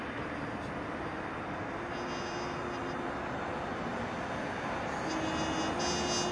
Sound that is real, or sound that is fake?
real